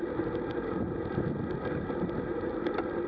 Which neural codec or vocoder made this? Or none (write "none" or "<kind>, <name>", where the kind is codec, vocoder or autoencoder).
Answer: none